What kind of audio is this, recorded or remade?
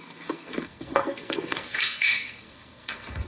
remade